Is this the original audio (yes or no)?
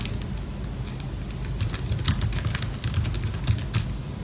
yes